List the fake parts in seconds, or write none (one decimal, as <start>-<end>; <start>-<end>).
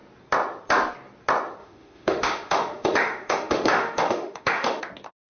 1.6-4.8